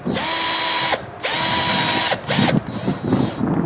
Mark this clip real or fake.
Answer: real